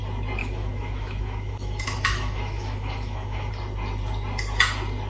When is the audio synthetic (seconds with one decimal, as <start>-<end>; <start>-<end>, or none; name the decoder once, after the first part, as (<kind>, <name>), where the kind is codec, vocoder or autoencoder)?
0.4-3.5 (autoencoder, DAC-VAE)

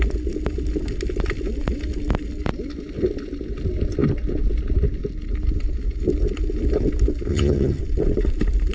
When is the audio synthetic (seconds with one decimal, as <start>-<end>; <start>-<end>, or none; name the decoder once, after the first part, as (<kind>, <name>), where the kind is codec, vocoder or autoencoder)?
7.3-7.8 (vocoder, HiFi-GAN)

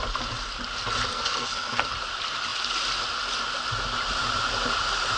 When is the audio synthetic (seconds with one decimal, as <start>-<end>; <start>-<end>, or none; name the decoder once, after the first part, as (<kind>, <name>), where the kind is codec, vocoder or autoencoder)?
1.1-1.9 (codec, SNAC)

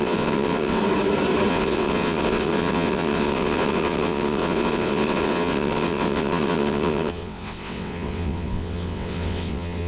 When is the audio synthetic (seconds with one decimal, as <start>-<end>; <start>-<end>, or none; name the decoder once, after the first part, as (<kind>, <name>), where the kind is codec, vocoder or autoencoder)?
0.0-0.8 (vocoder, WaveNeXt); 1.5-9.9

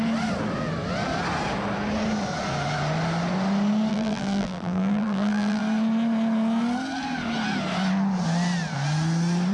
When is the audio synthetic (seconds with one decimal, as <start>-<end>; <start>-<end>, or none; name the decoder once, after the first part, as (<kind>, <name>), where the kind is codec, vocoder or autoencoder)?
3.9-5.6 (vocoder, BigVGAN v2)

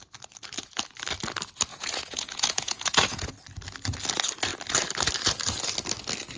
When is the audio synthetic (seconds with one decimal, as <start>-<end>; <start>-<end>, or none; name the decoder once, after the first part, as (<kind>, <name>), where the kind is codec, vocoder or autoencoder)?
1.7-3.3 (vocoder, Vocos)

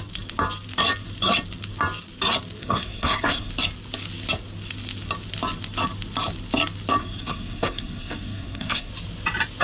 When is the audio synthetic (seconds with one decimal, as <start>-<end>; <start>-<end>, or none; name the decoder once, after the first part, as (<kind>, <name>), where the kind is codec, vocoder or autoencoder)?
2.6-3.5 (codec, SNAC); 7.0-8.9